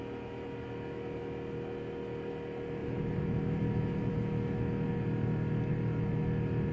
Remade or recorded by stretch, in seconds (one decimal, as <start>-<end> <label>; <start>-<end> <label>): 0.0-2.8 recorded; 2.8-4.1 remade; 4.1-5.7 recorded; 5.7-6.2 remade; 6.2-6.7 recorded